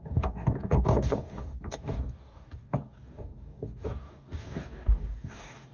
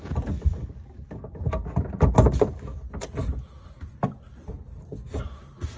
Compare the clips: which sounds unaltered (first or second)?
second